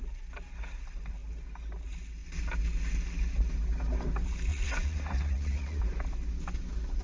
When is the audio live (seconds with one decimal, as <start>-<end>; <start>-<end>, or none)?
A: 0.0-4.5; 5.8-7.0